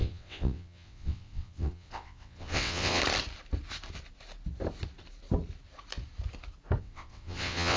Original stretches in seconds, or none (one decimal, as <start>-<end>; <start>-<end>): 3.0-6.8